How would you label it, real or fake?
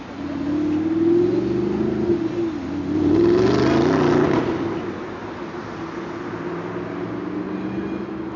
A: real